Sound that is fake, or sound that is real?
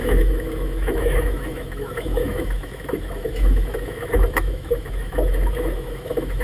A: fake